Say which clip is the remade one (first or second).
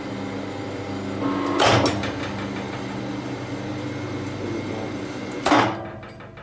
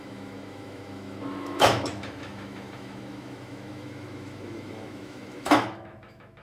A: second